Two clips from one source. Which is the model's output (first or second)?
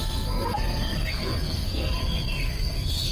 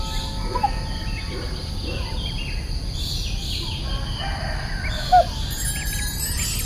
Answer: first